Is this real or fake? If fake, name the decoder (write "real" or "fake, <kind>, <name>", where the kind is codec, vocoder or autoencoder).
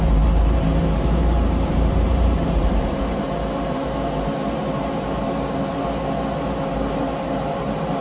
fake, vocoder, BigVGAN v2